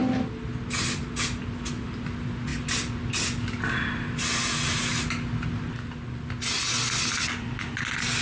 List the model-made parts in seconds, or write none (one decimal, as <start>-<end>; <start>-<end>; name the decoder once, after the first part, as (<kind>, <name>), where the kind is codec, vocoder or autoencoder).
none